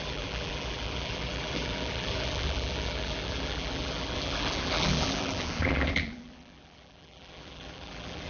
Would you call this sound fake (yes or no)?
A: yes